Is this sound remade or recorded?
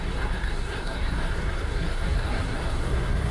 remade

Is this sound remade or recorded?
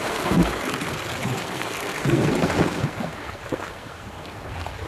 remade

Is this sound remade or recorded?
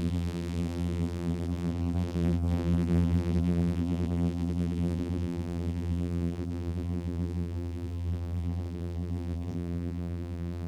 remade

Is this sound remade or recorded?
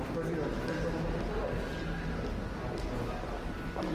recorded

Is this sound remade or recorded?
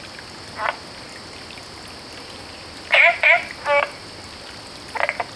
recorded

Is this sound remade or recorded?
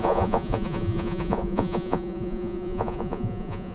remade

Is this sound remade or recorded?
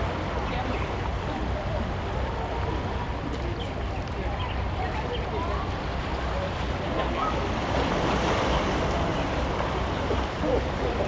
recorded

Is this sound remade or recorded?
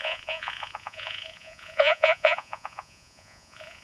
remade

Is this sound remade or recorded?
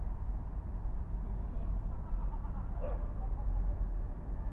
recorded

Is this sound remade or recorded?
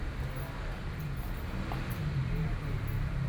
recorded